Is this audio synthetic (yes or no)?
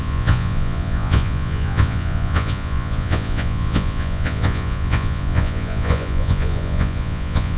yes